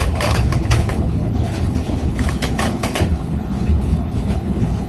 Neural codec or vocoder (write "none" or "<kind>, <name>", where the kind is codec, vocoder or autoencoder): codec, HILCodec